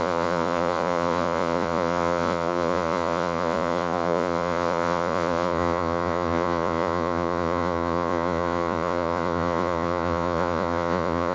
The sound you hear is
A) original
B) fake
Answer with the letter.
B